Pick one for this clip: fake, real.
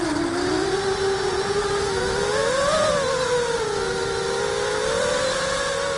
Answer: real